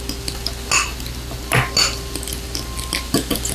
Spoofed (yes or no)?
no